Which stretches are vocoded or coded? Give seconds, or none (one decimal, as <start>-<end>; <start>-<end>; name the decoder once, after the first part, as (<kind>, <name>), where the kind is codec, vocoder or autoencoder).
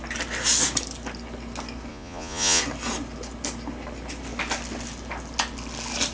1.9-2.6 (vocoder, Vocos)